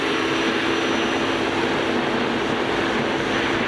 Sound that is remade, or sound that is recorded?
recorded